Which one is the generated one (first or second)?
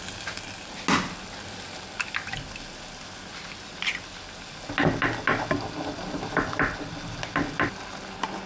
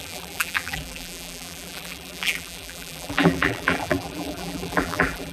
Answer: second